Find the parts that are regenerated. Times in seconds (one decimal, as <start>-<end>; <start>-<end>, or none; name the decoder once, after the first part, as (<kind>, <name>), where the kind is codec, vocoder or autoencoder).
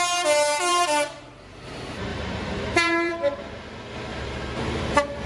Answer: 0.7-1.3 (vocoder, BigVGAN v2); 2.1-3.4; 4.1-4.8